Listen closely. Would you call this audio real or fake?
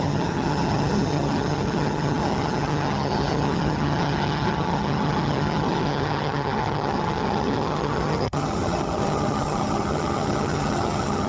fake